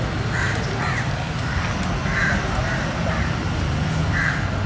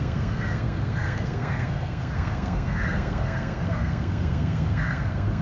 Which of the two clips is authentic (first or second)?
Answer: first